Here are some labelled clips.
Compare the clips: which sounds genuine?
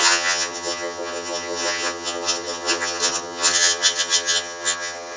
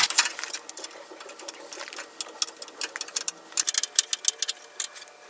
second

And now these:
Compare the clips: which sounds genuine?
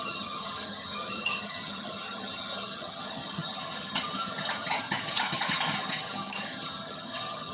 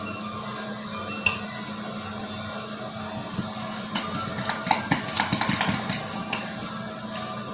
second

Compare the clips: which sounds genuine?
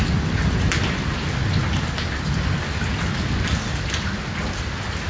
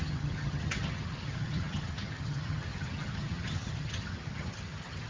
first